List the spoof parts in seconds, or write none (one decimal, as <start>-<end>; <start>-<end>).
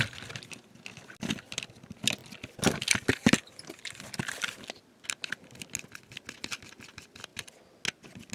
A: none